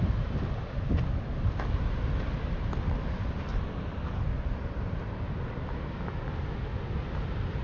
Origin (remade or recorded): recorded